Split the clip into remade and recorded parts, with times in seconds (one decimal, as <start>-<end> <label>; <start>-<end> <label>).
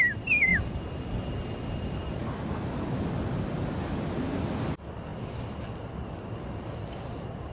0.0-7.5 recorded